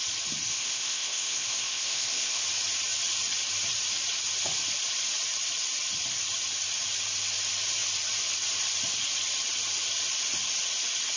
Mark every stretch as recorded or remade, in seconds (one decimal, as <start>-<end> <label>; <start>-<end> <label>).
0.0-0.5 recorded; 0.5-2.4 remade; 2.4-11.2 recorded